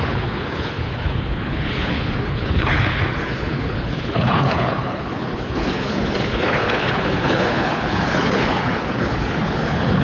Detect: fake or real fake